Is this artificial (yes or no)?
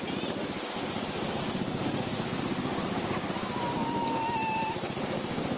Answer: no